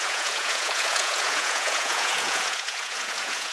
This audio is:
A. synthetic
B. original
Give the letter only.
A